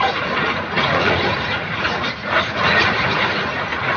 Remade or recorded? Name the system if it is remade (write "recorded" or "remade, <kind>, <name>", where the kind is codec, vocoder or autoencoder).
remade, vocoder, Vocos